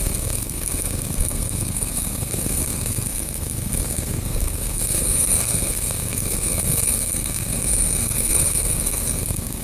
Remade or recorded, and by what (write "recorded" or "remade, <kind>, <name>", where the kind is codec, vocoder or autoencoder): remade, codec, SNAC